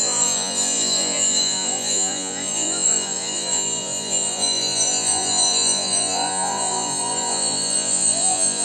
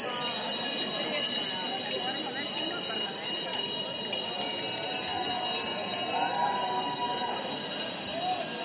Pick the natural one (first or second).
second